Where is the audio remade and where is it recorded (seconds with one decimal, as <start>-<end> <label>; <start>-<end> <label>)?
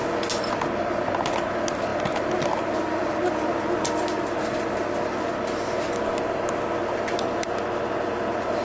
0.0-8.6 recorded